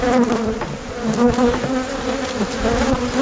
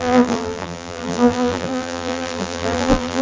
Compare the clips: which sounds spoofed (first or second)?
second